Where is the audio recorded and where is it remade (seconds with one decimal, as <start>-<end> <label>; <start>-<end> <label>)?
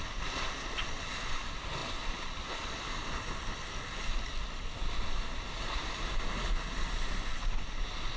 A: 0.0-1.8 recorded; 1.8-2.7 remade; 2.7-4.3 recorded; 4.3-5.8 remade; 5.8-8.2 recorded